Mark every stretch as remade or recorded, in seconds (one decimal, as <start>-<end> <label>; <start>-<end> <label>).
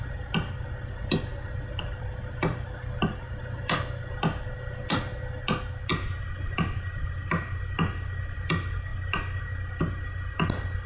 0.0-5.9 recorded; 5.9-7.1 remade; 7.1-8.9 recorded; 8.9-9.4 remade; 9.4-10.9 recorded